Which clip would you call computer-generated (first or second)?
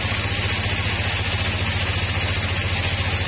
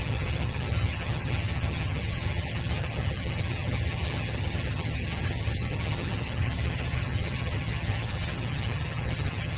second